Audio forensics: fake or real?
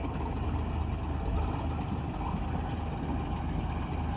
real